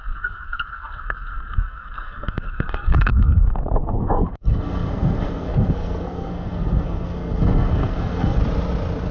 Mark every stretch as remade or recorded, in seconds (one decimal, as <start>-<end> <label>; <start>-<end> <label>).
0.0-8.4 remade; 8.4-9.1 recorded